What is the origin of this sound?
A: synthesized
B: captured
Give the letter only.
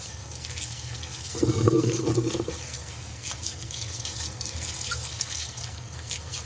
A